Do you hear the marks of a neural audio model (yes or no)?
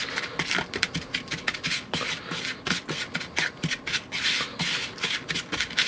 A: no